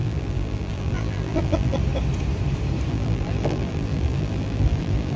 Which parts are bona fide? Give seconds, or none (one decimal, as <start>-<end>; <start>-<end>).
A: 1.8-2.9